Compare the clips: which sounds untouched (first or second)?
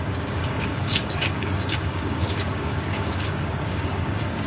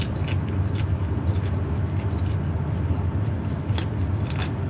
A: second